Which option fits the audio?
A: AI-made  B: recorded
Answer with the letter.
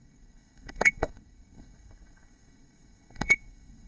A